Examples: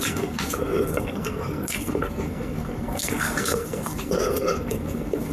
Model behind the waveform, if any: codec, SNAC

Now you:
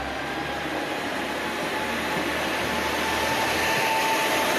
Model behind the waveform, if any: none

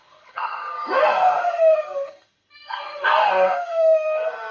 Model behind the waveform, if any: codec, SNAC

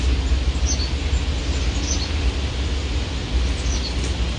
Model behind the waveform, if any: none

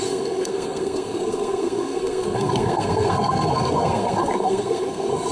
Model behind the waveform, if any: codec, SNAC